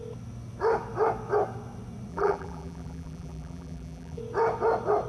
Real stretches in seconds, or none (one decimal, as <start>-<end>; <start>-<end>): 0.0-2.1; 4.2-5.1